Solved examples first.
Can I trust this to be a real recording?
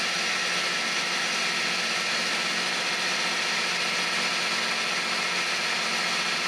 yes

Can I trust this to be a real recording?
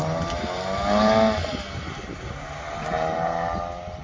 yes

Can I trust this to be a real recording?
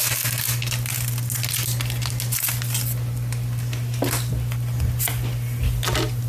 yes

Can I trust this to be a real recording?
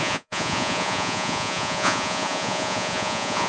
no